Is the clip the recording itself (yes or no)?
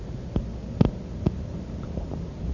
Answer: yes